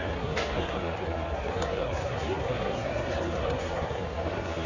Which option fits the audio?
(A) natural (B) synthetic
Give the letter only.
B